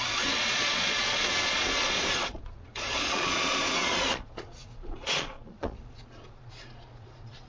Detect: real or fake fake